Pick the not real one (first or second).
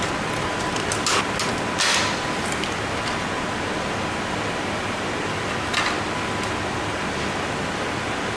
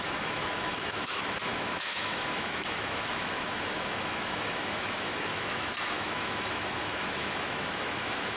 second